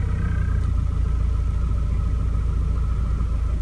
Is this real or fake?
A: real